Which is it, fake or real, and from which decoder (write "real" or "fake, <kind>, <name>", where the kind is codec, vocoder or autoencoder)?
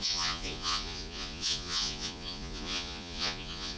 fake, vocoder, Vocos